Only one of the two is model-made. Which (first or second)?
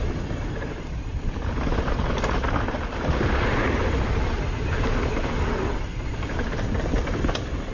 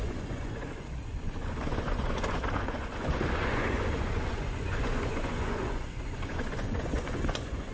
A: second